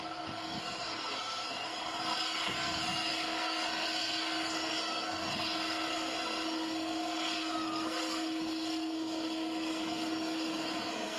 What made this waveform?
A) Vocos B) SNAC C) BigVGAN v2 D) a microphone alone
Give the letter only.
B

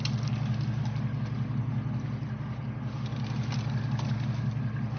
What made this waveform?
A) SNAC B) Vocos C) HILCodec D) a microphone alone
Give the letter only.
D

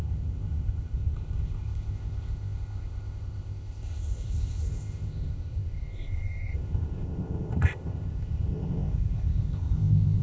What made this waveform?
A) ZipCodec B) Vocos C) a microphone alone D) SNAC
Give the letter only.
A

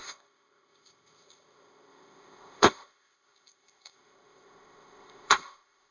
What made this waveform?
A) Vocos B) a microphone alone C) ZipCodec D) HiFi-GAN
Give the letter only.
C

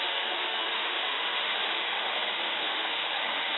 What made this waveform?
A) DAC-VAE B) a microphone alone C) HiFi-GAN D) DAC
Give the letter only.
A